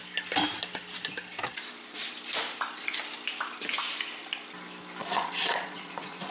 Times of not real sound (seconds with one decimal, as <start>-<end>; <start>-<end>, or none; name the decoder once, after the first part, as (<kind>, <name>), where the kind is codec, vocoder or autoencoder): 5.0-6.3 (vocoder, Vocos)